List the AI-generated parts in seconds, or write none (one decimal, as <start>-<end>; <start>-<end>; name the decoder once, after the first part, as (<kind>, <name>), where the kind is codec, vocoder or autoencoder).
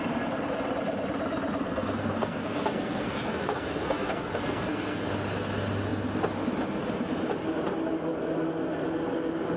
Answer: 1.6-5.0 (codec, SNAC)